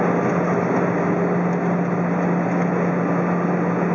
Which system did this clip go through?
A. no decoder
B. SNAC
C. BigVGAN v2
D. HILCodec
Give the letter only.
A